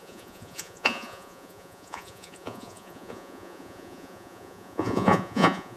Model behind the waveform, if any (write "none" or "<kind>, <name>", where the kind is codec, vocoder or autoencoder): vocoder, Vocos